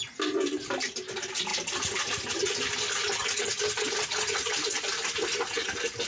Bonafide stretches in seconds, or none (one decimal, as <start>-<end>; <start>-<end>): 0.0-6.1